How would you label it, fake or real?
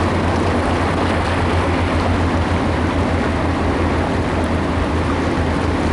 real